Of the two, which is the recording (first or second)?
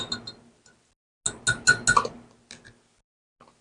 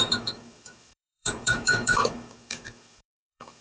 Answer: first